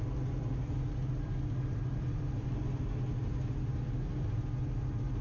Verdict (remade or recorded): recorded